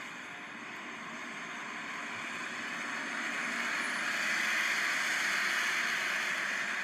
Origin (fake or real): real